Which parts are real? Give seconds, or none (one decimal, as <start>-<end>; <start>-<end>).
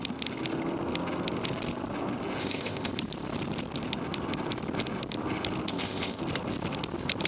0.0-2.4; 2.9-5.7; 6.2-7.3